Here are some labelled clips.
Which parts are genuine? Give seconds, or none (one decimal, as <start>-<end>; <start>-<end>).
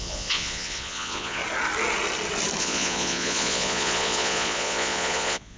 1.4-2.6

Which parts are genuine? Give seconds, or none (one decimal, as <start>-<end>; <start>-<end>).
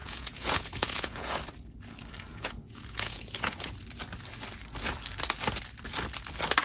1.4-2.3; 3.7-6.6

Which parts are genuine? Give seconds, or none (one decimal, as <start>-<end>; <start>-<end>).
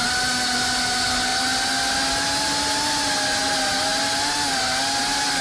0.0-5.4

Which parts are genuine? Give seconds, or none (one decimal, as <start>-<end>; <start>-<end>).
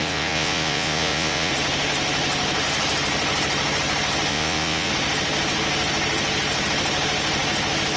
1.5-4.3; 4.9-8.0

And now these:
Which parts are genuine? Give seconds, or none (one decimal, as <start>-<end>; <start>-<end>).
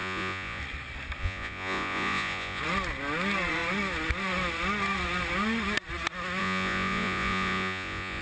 0.6-1.2; 2.6-6.4